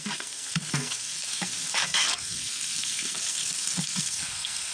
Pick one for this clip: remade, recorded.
remade